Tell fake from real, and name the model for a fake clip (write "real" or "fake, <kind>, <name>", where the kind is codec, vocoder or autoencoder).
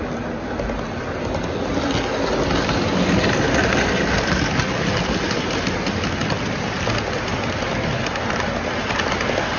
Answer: real